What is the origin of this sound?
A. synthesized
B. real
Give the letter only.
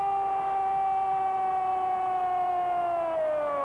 B